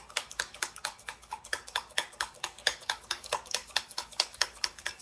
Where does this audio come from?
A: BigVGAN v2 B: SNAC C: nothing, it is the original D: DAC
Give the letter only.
D